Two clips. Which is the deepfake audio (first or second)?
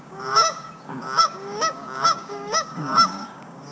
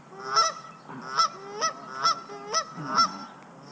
first